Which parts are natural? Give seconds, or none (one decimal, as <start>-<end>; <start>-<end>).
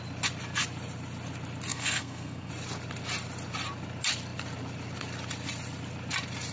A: 0.0-1.7; 2.5-6.5